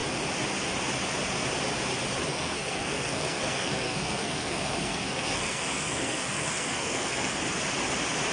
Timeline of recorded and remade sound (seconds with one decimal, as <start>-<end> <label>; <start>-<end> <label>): 0.0-2.3 recorded; 2.3-7.3 remade; 7.3-8.3 recorded